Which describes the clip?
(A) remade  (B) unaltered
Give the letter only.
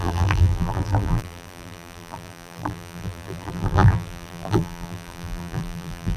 A